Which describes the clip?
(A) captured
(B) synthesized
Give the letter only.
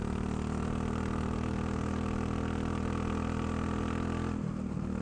A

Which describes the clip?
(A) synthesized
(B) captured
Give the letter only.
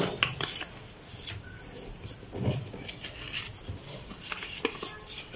B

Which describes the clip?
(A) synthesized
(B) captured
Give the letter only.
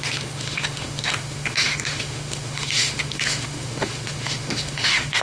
A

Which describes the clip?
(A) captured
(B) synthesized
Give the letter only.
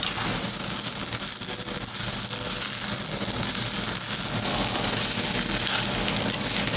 A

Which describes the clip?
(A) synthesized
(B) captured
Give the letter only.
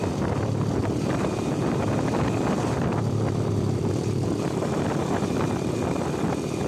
A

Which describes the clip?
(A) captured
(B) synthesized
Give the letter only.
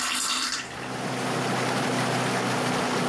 A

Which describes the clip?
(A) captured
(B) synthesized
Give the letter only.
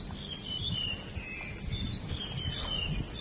A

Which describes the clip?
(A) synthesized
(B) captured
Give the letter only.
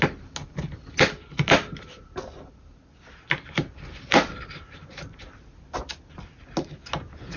B